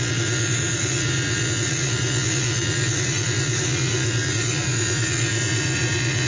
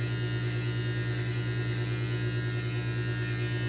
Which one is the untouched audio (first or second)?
second